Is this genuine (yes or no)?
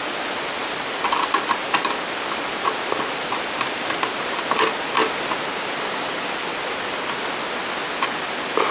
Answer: yes